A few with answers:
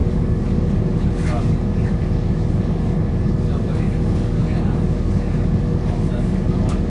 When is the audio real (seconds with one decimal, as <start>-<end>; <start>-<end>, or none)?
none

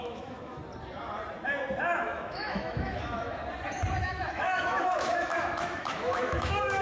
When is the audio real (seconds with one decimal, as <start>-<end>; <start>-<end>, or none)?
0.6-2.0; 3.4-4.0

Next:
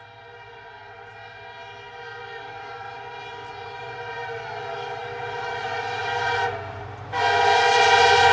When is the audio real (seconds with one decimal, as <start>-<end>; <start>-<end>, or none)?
0.0-2.2; 2.9-8.3

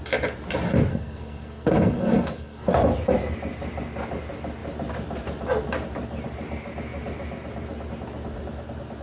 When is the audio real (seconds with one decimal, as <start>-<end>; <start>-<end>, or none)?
0.0-0.9; 2.7-9.0